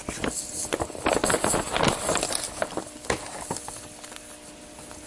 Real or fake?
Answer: real